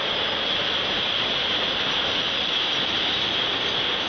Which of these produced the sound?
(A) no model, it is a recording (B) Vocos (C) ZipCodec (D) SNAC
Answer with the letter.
A